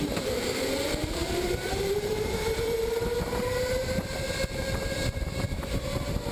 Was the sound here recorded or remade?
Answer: remade